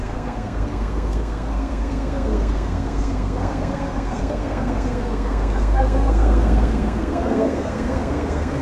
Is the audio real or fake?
fake